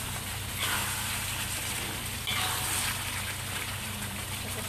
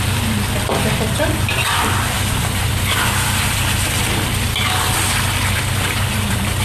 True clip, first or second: first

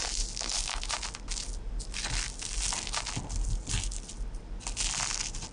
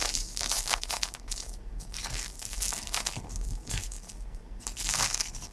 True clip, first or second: first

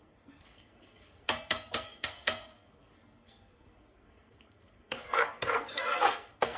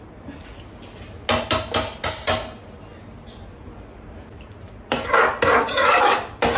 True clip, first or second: second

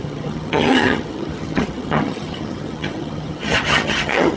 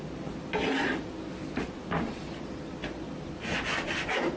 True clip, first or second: second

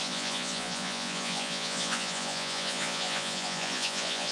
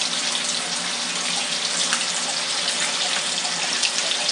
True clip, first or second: second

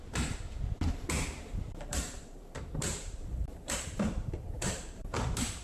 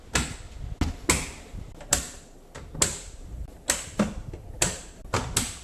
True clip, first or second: second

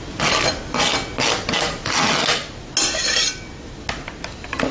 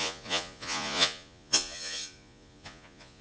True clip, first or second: first